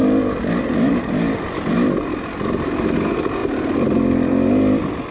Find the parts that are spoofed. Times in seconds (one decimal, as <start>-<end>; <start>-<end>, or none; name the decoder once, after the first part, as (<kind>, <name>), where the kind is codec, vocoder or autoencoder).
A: none